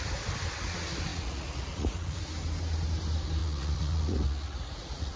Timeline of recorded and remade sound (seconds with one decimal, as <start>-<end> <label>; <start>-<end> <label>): 0.0-1.1 recorded; 1.1-2.2 remade; 2.2-3.4 recorded; 3.4-5.2 remade